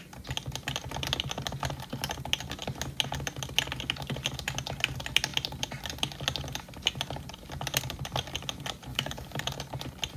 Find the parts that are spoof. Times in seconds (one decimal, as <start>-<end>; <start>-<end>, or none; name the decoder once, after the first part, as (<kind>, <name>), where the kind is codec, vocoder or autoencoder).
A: 8.9-9.4 (codec, DAC)